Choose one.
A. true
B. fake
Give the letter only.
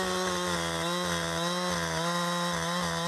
A